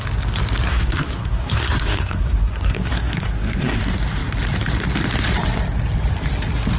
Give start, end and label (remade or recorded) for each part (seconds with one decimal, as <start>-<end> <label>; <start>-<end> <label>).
0.0-0.7 recorded; 0.7-3.8 remade; 3.8-6.8 recorded